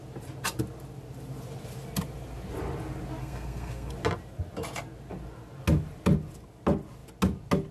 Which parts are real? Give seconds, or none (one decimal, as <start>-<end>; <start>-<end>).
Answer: 0.0-3.2; 3.9-7.7